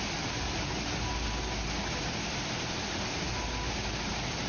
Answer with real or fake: real